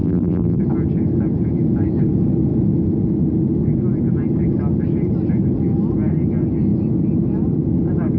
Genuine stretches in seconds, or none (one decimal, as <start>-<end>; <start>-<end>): 0.6-8.2